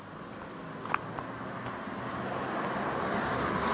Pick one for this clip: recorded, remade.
recorded